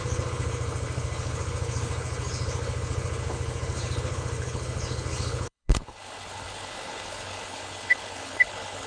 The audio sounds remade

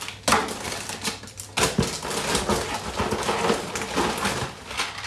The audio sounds recorded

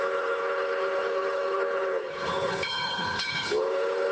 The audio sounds remade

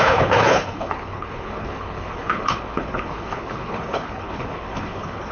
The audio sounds remade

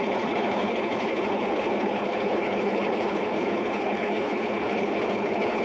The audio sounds remade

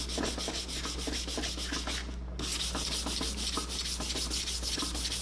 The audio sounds recorded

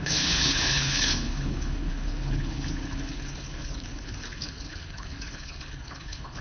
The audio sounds remade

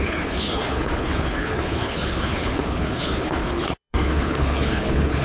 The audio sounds remade